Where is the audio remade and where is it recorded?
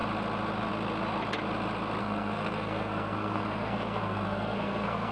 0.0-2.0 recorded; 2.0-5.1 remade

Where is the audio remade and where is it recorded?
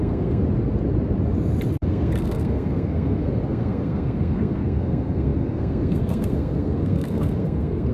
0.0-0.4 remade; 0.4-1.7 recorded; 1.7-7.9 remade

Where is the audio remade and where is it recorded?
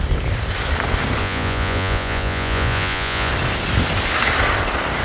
0.0-1.2 recorded; 1.2-3.3 remade; 3.3-5.0 recorded